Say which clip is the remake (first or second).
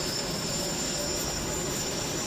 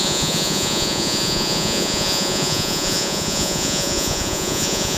second